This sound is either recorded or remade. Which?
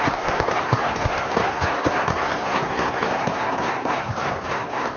remade